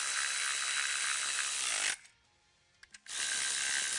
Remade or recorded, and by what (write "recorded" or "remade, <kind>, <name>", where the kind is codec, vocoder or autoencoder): recorded